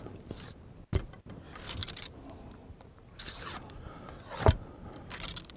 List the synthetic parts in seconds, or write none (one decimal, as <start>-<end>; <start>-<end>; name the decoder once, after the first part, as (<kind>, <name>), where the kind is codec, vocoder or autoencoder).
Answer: 1.8-3.2 (vocoder, BigVGAN v2)